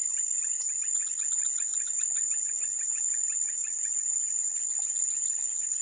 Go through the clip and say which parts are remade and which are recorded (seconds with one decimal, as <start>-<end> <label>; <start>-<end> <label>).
0.0-5.8 recorded